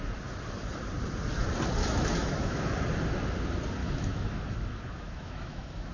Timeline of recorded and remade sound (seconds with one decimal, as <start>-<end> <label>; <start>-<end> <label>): 0.0-1.8 recorded; 1.8-2.7 remade; 2.7-3.8 recorded; 3.8-5.9 remade